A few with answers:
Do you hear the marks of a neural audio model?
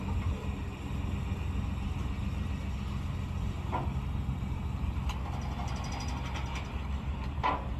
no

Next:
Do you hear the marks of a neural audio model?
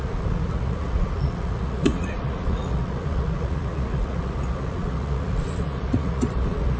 yes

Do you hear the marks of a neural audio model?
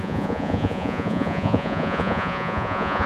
yes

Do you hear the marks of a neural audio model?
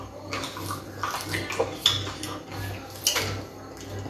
no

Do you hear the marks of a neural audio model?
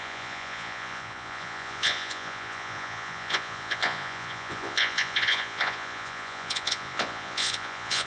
yes